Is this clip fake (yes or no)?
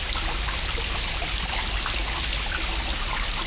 no